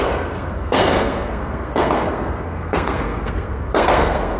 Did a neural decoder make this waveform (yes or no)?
yes